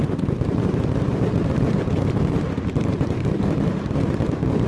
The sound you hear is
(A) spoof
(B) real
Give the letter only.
A